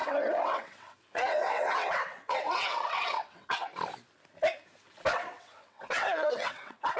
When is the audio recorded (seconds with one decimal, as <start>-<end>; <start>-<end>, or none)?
3.7-5.1